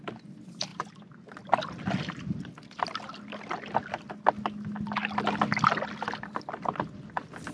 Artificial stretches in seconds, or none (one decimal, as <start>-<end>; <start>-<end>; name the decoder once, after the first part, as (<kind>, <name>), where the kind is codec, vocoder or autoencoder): none